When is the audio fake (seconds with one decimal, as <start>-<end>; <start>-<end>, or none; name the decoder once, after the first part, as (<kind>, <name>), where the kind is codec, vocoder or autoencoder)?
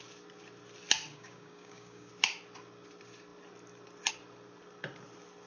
1.1-2.1 (codec, DAC)